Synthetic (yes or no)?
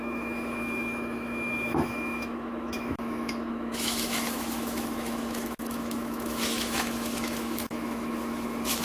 yes